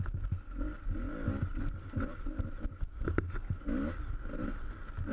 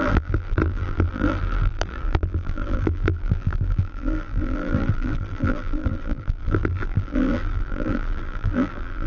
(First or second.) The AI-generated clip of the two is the second